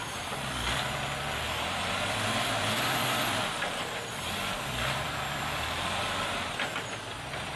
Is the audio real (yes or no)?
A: no